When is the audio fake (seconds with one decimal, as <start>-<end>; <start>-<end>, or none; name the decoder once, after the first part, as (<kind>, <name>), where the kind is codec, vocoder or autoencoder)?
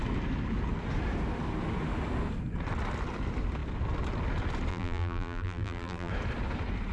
4.7-6.1 (vocoder, BigVGAN v2)